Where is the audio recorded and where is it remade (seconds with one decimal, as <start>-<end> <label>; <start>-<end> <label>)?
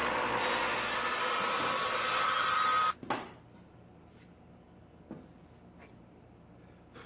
0.0-7.1 recorded